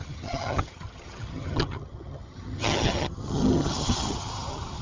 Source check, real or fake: fake